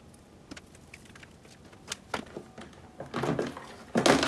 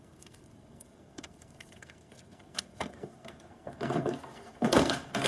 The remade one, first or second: second